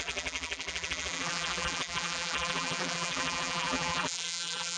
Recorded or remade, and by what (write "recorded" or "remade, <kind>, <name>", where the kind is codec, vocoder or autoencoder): remade, vocoder, BigVGAN v2